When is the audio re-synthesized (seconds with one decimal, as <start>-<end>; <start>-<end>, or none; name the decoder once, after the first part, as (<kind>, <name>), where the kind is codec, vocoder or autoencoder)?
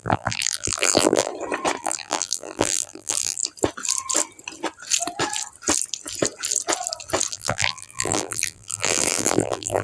0.0-1.3 (vocoder, BigVGAN v2); 1.8-3.4; 7.3-9.8